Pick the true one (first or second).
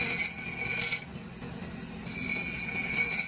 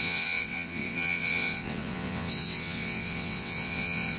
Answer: first